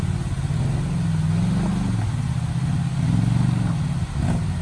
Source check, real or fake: real